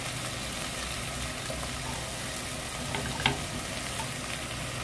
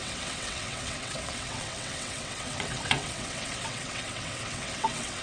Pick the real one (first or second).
first